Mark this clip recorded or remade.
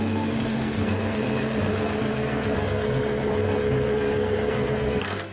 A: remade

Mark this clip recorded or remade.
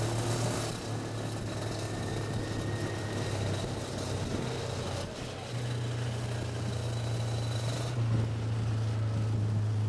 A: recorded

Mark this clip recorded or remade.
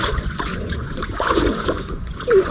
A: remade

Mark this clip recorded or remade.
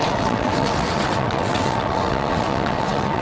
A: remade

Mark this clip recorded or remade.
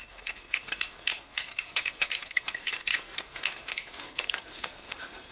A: remade